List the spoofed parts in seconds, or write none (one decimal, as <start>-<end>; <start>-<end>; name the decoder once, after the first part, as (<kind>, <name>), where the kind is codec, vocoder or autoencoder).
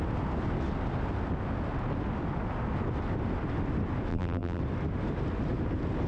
4.1-4.6 (vocoder, BigVGAN v2)